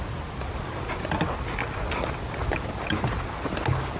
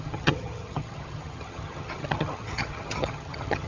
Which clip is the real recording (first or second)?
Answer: first